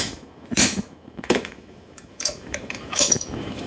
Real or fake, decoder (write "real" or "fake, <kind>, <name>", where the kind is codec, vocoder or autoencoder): fake, autoencoder, DAC-VAE